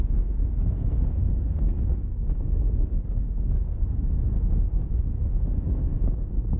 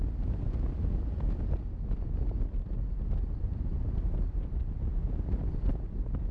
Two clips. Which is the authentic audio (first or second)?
second